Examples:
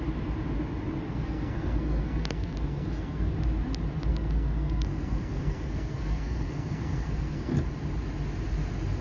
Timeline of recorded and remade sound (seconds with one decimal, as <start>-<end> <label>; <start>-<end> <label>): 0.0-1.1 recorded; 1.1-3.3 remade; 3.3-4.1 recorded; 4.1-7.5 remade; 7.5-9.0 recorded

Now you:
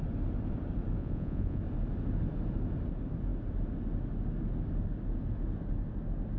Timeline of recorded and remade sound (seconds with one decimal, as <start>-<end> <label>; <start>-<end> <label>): 0.0-1.0 recorded; 1.0-1.6 remade; 1.6-6.4 recorded

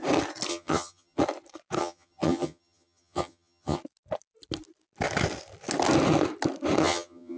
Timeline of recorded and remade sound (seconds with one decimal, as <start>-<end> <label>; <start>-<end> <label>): 0.0-0.5 recorded; 0.5-1.2 remade; 1.2-1.8 recorded; 1.8-3.8 remade; 3.8-6.8 recorded; 6.8-7.4 remade